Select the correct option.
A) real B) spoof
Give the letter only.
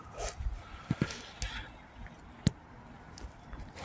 A